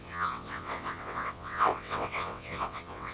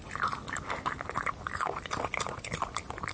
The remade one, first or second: first